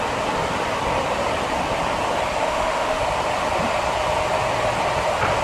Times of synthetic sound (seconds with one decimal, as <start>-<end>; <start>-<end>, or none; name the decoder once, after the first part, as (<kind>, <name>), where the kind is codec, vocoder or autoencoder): 2.4-3.0 (autoencoder, DAC-VAE)